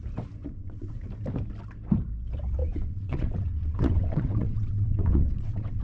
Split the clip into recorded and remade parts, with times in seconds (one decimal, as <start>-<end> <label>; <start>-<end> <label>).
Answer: 0.0-0.4 recorded; 0.4-1.1 remade; 1.1-2.6 recorded; 2.6-5.8 remade